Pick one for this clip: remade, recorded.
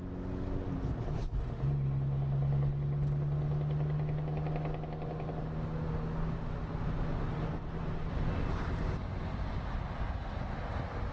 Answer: recorded